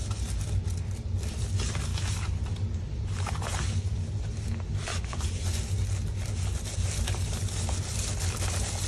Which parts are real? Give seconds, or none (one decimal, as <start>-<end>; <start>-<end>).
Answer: 0.0-4.9; 5.6-8.9